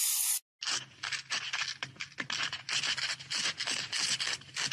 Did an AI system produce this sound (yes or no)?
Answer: no